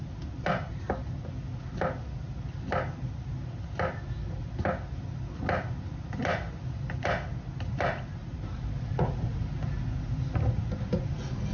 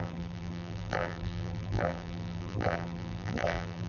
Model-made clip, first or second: second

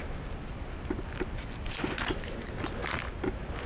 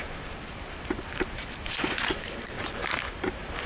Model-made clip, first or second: second